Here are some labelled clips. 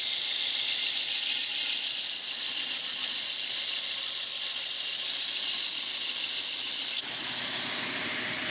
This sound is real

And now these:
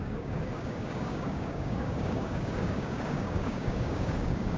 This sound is fake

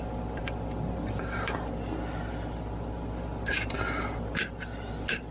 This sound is real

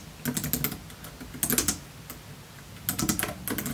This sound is real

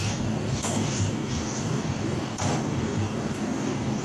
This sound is fake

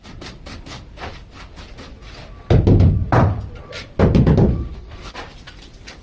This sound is real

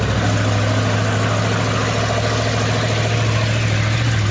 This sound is real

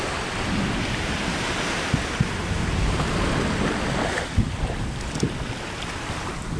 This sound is real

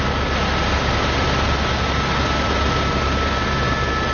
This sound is real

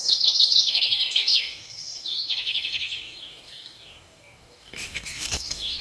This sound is fake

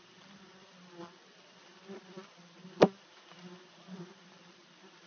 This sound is real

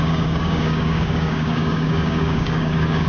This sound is fake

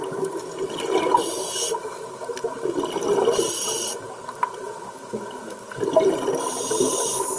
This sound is real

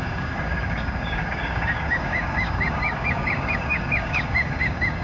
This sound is fake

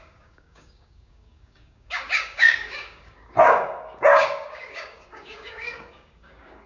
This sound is fake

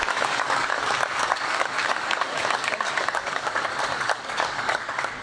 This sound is fake